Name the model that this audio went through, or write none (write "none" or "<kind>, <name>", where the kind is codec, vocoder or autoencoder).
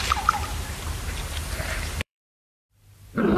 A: vocoder, BigVGAN v2